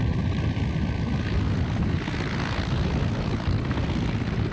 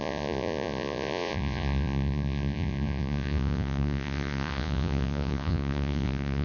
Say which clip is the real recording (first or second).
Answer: first